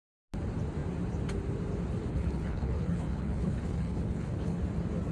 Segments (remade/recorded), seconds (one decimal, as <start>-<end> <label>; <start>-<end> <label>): 0.0-2.1 recorded; 2.1-4.6 remade; 4.6-5.1 recorded